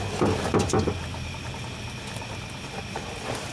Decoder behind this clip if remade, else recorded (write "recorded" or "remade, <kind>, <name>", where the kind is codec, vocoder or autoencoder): recorded